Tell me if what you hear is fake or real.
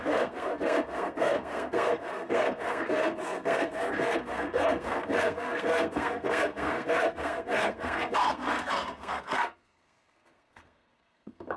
fake